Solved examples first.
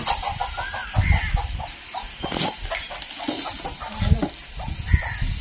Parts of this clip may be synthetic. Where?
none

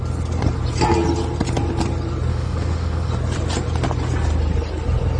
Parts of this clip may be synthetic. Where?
2.3-3.1 (autoencoder, DAC-VAE)

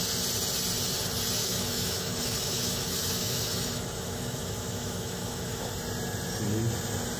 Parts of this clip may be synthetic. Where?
1.4-5.7 (autoencoder, DAC-VAE)

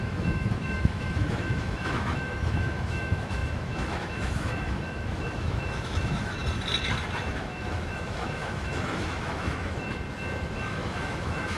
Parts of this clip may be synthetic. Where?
0.0-6.4 (autoencoder, DAC-VAE); 7.2-9.9; 10.6-11.6

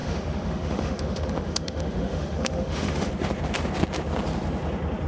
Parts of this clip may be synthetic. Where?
0.0-3.1 (autoencoder, DAC-VAE)